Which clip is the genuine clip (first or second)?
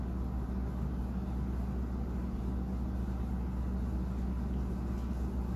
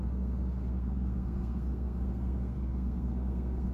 first